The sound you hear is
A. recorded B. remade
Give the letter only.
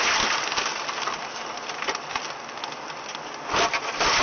A